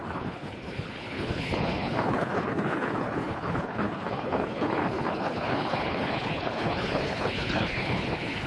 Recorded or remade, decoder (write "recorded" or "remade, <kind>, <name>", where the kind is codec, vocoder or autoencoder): remade, codec, HILCodec